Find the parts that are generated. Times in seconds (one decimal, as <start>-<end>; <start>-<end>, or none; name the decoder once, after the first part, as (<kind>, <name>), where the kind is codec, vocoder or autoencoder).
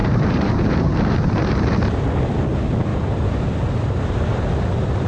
0.0-1.6 (vocoder, BigVGAN v2); 2.9-4.5